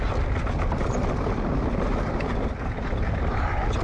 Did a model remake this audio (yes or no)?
no